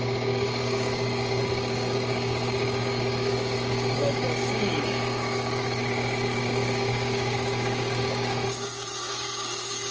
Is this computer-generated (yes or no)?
yes